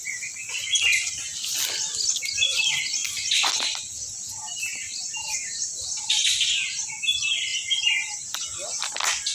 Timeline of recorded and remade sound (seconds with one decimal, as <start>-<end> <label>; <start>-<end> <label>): 0.0-0.8 remade; 0.8-4.7 recorded; 4.7-6.0 remade; 6.0-7.5 recorded; 7.5-8.4 remade; 8.4-9.3 recorded